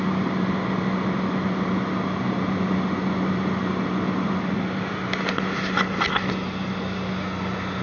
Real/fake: real